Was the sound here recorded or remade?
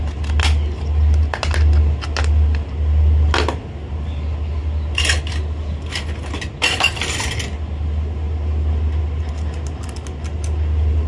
recorded